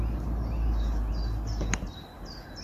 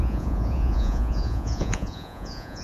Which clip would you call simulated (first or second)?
second